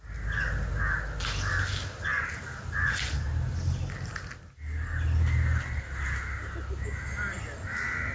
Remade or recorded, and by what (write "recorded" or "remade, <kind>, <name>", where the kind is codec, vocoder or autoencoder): recorded